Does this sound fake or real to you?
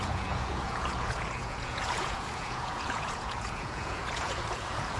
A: fake